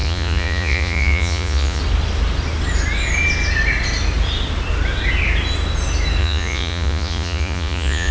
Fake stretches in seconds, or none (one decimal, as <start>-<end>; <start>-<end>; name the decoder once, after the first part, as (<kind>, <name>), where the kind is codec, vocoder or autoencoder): 0.0-1.8 (vocoder, Vocos); 6.2-8.1